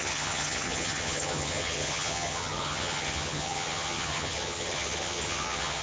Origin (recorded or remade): remade